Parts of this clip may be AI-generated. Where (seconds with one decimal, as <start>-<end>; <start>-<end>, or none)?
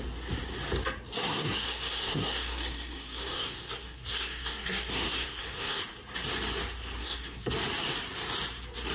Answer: 1.2-5.8; 7.0-7.5